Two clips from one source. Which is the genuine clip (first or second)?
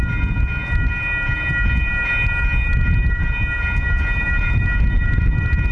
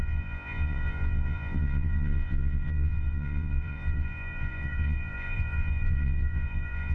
first